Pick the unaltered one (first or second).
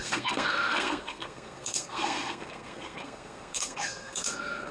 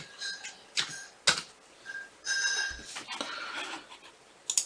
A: second